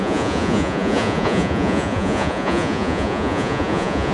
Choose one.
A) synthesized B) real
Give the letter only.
A